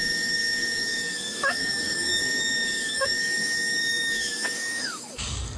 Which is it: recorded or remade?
remade